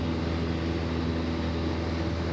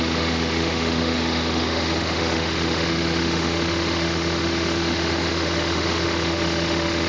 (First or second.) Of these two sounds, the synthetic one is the second